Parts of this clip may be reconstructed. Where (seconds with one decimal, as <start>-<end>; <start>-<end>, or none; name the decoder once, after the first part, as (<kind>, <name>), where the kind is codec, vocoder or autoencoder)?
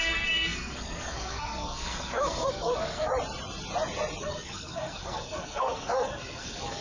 0.0-3.1 (codec, SNAC); 4.2-6.8